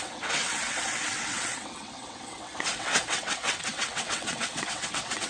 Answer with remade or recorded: remade